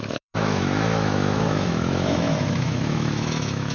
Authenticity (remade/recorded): remade